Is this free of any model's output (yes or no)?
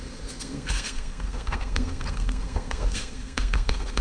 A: no